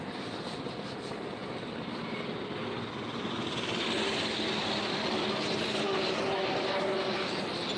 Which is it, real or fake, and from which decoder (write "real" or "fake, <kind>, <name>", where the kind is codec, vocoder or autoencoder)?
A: real